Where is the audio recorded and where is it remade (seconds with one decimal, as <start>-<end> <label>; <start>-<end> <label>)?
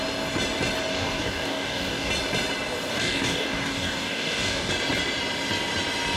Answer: 0.0-0.9 recorded; 0.9-2.1 remade; 2.1-2.9 recorded; 2.9-4.7 remade; 4.7-6.2 recorded